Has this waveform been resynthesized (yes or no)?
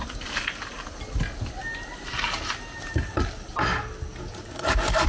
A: no